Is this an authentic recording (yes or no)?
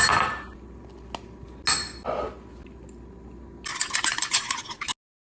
yes